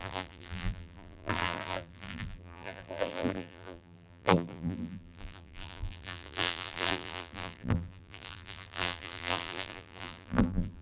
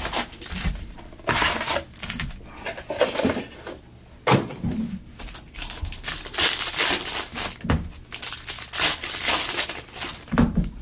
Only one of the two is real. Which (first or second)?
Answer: second